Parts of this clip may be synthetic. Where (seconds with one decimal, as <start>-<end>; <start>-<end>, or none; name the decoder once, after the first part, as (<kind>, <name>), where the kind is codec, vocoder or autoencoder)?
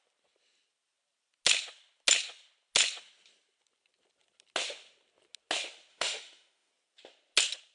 5.9-6.7 (autoencoder, DAC-VAE)